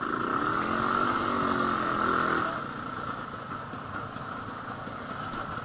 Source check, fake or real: real